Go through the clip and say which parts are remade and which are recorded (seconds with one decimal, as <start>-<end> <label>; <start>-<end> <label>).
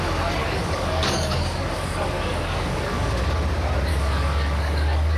0.0-0.4 recorded; 0.4-3.3 remade; 3.3-3.9 recorded; 3.9-5.2 remade